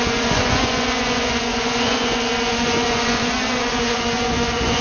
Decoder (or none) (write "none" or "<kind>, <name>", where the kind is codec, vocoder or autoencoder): vocoder, Vocos